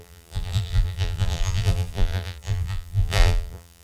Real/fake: fake